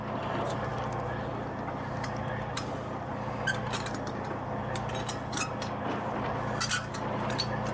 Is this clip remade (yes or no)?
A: no